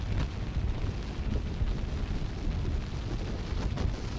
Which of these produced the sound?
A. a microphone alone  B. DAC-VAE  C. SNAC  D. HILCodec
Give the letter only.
A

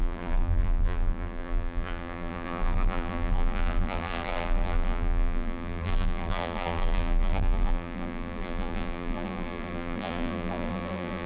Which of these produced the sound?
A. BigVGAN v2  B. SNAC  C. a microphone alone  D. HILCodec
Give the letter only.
A